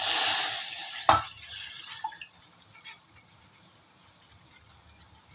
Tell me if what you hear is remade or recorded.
recorded